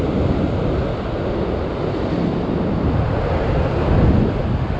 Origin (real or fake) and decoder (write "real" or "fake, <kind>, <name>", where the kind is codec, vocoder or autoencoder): real